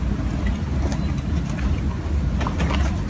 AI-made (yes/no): no